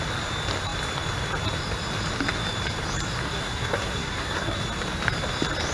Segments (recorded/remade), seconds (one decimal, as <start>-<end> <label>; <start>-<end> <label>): 0.0-3.2 recorded; 3.2-4.6 remade; 4.6-5.7 recorded